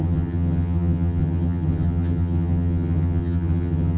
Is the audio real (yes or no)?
no